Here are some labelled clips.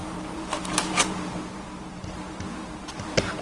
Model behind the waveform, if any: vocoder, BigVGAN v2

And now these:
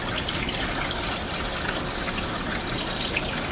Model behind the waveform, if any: none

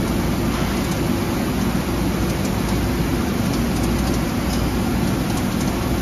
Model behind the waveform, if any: none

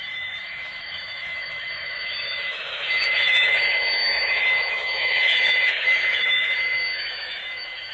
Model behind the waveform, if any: autoencoder, DAC-VAE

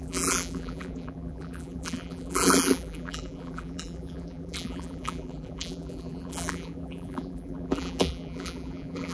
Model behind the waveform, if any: vocoder, BigVGAN v2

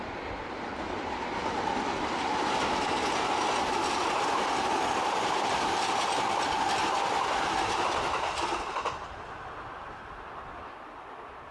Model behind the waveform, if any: none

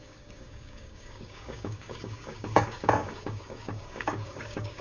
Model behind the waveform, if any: codec, DAC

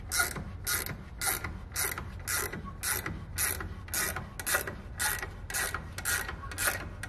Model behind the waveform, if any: none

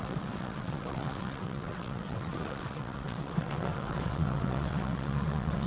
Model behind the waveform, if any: vocoder, WaveNeXt